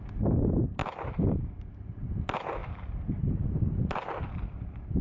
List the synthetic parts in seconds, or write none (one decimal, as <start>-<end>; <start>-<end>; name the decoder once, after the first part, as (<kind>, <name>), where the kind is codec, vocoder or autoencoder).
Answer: none